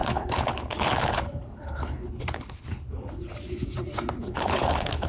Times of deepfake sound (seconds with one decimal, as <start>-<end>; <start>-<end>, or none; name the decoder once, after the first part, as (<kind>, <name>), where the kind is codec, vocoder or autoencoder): 0.0-3.2 (codec, HILCodec); 4.2-5.1